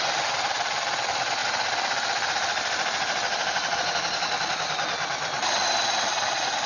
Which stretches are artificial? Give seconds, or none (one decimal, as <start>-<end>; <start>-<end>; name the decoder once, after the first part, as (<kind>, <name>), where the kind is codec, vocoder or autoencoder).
none